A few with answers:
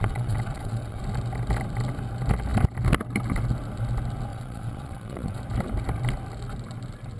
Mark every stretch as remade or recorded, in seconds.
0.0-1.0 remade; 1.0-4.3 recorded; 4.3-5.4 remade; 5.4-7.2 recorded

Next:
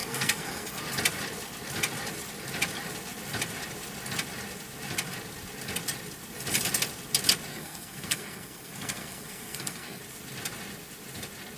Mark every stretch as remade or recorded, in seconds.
0.0-0.8 remade; 0.8-7.5 recorded; 7.5-10.0 remade; 10.0-11.6 recorded

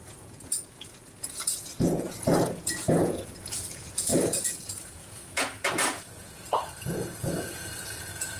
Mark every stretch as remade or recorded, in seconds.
0.0-8.4 remade

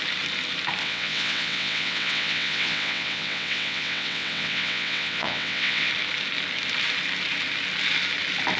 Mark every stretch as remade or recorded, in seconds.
0.0-0.8 recorded; 0.8-5.9 remade; 5.9-8.6 recorded

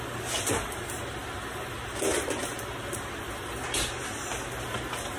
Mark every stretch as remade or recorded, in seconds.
0.0-5.2 recorded